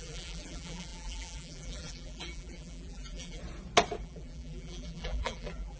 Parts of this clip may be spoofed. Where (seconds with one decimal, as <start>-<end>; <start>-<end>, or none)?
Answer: 0.0-3.4; 4.0-5.8